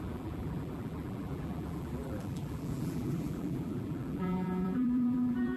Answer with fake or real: fake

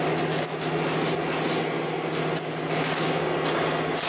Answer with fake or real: real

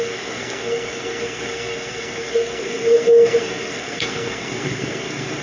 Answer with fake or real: fake